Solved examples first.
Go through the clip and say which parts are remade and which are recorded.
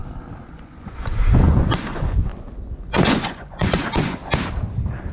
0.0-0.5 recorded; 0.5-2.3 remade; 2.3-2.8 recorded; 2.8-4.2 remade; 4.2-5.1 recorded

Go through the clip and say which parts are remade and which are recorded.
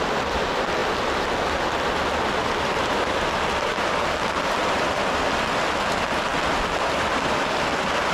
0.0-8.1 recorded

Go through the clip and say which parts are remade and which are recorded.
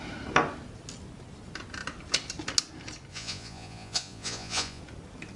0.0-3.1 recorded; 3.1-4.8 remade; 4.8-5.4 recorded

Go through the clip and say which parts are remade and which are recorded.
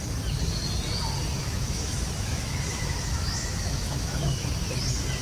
0.0-1.4 recorded; 1.4-4.5 remade; 4.5-5.2 recorded